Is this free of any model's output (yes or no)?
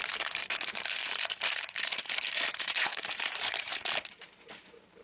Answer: no